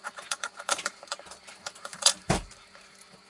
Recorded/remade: remade